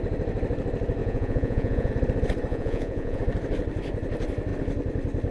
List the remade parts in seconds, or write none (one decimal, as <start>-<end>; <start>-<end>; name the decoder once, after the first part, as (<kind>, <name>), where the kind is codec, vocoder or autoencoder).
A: 1.0-1.9 (vocoder, Vocos); 2.5-3.2